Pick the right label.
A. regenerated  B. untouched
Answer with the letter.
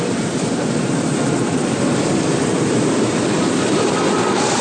A